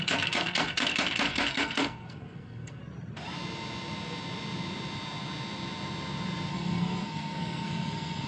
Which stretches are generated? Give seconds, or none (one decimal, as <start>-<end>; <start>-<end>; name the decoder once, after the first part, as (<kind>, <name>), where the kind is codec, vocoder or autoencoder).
0.0-2.8 (codec, SNAC); 6.5-8.3